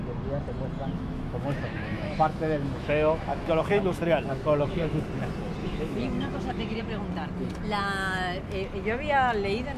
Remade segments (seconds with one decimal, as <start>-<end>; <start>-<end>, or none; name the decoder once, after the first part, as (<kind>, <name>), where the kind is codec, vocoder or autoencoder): 0.8-5.0 (autoencoder, DAC-VAE); 5.6-6.8